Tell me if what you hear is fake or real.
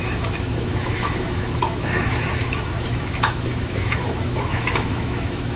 fake